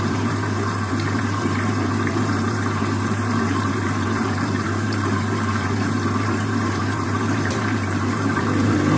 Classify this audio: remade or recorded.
remade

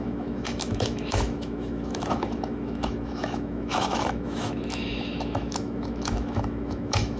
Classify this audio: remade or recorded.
remade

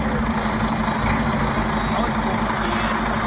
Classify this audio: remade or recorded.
recorded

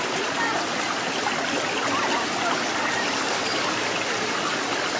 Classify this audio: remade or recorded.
recorded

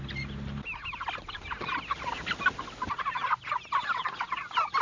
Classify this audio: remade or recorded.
recorded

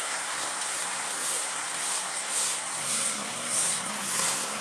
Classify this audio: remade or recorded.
remade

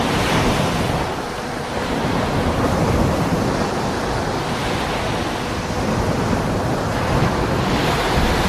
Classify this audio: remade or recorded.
remade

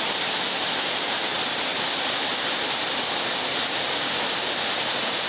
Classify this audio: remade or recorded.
recorded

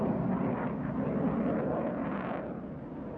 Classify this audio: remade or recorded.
recorded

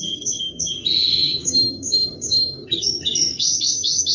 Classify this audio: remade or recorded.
remade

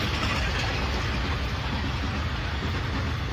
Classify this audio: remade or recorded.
recorded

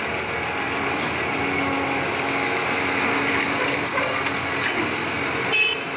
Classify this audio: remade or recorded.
recorded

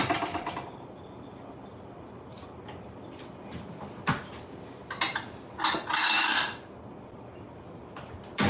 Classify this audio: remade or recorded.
recorded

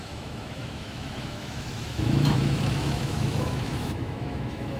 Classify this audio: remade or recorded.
remade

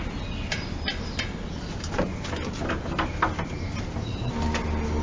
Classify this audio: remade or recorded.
recorded